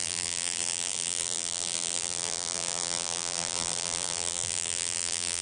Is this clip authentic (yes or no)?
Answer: no